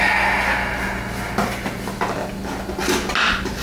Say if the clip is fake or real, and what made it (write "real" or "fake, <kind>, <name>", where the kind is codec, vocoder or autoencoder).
real